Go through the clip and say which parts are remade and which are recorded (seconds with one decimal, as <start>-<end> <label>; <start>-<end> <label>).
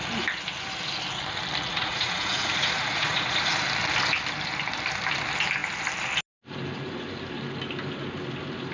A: 0.0-1.7 recorded; 1.7-3.5 remade; 3.5-8.7 recorded